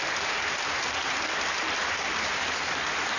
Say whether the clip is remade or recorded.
recorded